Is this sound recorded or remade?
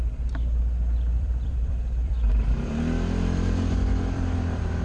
remade